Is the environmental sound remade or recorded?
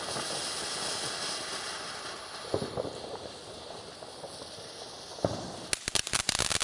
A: recorded